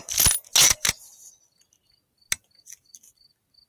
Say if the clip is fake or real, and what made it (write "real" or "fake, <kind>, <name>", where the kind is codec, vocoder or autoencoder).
real